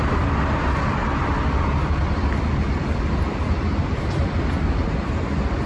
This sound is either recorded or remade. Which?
recorded